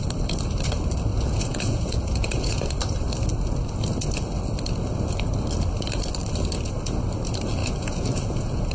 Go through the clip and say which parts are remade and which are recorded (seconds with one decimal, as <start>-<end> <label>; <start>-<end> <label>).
0.0-1.1 recorded; 1.1-2.6 remade; 2.6-7.6 recorded; 7.6-8.7 remade